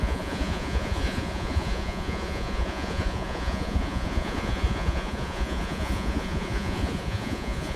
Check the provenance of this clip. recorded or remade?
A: remade